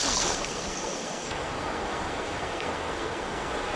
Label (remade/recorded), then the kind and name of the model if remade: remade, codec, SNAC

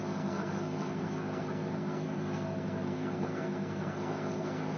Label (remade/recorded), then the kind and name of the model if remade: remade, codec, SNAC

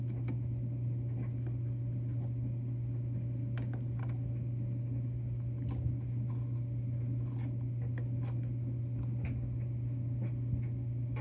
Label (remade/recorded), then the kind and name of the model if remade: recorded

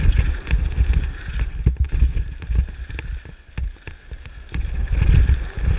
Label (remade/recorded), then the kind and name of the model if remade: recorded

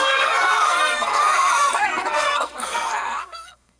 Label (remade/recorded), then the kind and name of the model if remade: remade, codec, SNAC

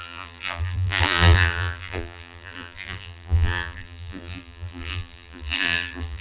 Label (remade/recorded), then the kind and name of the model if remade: remade, vocoder, BigVGAN v2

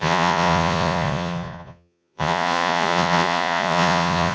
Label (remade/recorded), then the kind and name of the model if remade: remade, vocoder, Vocos